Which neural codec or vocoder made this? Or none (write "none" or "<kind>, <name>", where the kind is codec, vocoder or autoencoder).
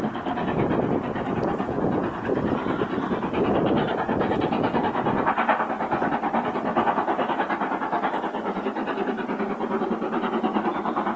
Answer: none